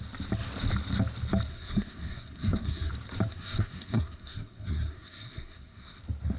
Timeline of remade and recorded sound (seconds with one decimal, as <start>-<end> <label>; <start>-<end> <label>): 0.0-1.5 recorded; 1.5-2.9 remade; 2.9-3.3 recorded; 3.3-6.0 remade; 6.0-6.4 recorded